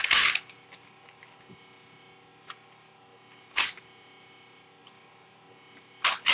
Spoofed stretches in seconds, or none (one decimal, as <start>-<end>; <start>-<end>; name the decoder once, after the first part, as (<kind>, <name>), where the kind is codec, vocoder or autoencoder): none

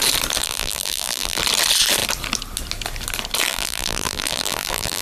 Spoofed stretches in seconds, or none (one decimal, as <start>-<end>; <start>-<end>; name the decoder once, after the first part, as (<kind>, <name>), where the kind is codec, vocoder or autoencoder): 0.4-1.4 (vocoder, BigVGAN v2); 3.5-5.0

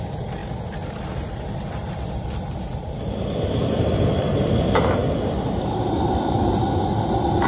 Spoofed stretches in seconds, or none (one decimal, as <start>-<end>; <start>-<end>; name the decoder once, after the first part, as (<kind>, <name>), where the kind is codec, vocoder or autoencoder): 0.4-4.6 (vocoder, BigVGAN v2)

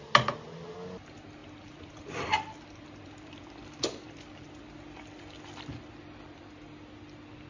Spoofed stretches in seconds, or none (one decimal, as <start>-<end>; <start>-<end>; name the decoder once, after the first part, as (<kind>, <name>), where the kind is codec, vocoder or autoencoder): 1.4-4.6 (vocoder, BigVGAN v2)

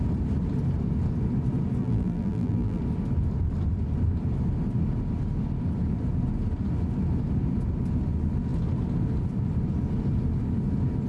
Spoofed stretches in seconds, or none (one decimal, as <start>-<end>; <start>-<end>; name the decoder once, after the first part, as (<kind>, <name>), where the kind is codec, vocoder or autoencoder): 1.8-2.8 (vocoder, BigVGAN v2)

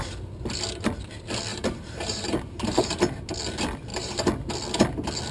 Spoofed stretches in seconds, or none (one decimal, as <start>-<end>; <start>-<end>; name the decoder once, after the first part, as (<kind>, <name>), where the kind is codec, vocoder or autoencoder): 1.5-3.0 (vocoder, BigVGAN v2); 3.9-4.5

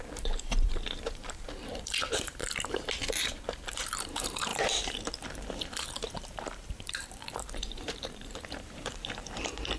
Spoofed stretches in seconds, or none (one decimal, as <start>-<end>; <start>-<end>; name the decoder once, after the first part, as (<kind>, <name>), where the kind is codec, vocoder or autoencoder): 0.0-2.4 (vocoder, BigVGAN v2); 3.1-9.8